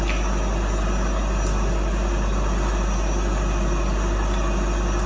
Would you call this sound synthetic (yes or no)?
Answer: no